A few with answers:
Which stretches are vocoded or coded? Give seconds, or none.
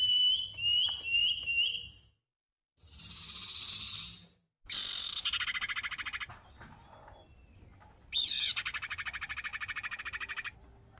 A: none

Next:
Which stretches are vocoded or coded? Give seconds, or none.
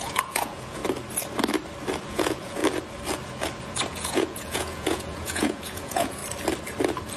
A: 0.0-0.8 (vocoder, Vocos); 2.1-2.6; 3.9-6.2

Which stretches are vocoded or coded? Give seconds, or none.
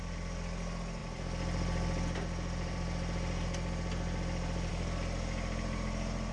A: 1.0-4.7 (vocoder, BigVGAN v2)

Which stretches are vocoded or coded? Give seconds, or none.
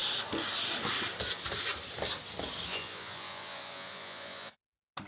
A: 2.7-4.5 (vocoder, Vocos)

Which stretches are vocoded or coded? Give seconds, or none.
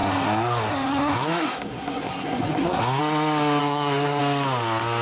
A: 0.0-3.0 (codec, SNAC); 3.6-4.2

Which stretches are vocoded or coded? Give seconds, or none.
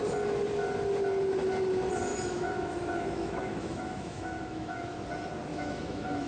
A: 2.1-5.0 (autoencoder, DAC-VAE); 5.5-6.3